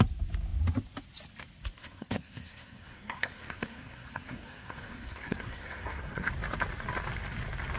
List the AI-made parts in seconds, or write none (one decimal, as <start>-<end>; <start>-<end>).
1.8-6.3